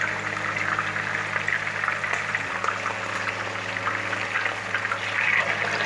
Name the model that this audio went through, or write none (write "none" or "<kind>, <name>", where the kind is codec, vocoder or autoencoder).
none